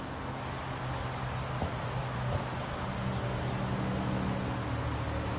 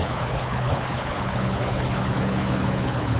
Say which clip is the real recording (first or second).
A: first